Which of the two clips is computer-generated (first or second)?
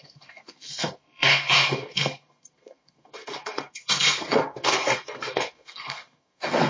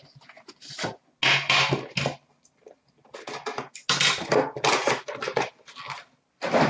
first